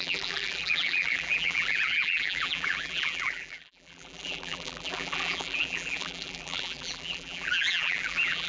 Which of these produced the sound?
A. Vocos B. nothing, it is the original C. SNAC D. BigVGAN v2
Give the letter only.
D